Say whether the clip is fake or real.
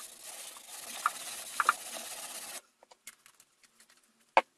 real